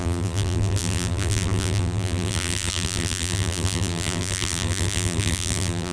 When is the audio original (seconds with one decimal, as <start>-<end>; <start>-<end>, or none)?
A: none